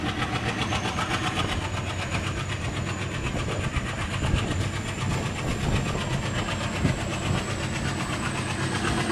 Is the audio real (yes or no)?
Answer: yes